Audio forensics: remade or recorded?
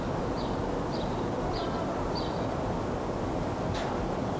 recorded